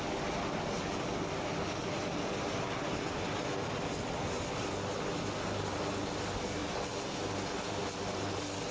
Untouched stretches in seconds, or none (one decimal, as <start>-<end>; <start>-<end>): 0.0-8.7